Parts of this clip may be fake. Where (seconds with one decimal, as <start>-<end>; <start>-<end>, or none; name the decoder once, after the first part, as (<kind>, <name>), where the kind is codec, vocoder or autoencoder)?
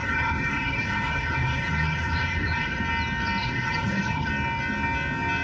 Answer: 0.0-2.8 (codec, HILCodec); 3.4-4.3